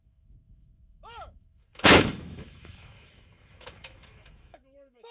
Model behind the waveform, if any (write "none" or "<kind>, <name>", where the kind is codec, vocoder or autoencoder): autoencoder, DAC-VAE